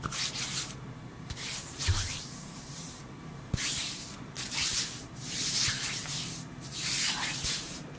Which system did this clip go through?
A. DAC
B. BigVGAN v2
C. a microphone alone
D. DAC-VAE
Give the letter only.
B